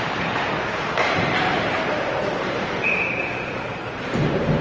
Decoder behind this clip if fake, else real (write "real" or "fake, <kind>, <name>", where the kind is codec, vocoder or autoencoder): fake, vocoder, BigVGAN v2